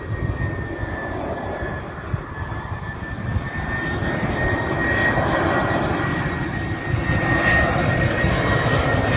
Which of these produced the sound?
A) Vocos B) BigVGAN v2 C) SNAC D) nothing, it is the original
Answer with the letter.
D